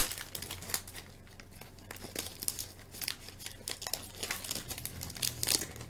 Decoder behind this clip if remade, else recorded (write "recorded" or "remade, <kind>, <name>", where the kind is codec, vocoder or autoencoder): recorded